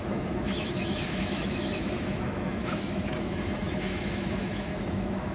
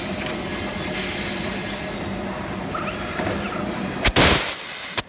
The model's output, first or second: first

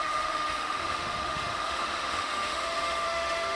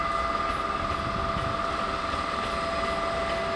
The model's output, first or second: first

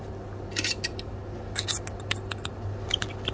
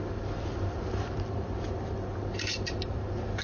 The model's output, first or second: second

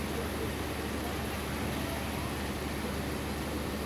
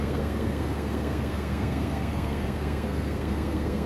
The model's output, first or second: second